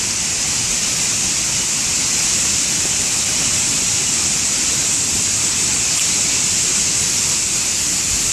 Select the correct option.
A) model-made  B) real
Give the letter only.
B